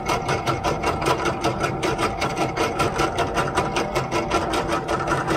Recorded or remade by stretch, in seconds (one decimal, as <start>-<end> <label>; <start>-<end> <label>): 0.0-2.9 remade; 2.9-4.7 recorded; 4.7-5.4 remade